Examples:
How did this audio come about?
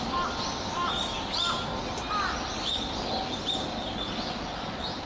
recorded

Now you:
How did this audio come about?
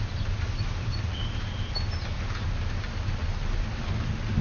recorded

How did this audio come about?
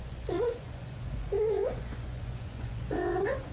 remade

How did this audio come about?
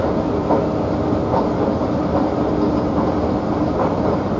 recorded